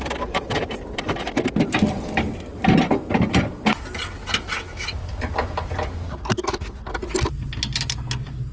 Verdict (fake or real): real